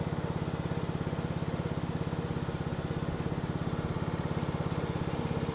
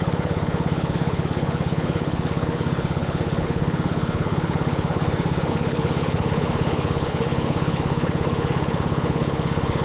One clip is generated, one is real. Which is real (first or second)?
first